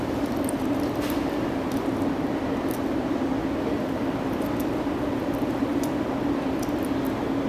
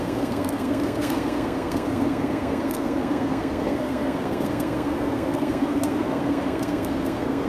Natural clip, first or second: first